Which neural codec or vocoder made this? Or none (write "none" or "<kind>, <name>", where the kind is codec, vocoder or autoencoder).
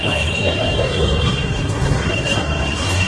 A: codec, SNAC